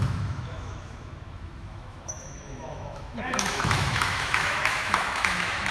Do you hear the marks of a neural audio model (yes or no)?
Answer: yes